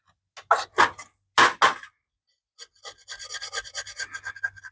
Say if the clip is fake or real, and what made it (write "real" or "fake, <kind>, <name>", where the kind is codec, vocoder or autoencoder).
real